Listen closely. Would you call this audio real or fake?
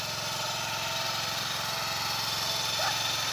real